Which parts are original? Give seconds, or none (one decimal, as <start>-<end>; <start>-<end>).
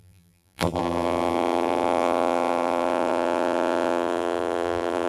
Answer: none